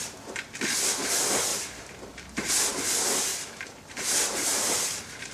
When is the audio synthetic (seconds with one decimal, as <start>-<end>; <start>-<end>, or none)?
1.5-2.5; 3.3-5.3